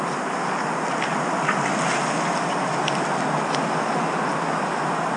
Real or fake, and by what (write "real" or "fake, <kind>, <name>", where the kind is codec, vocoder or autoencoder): real